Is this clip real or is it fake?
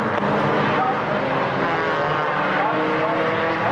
real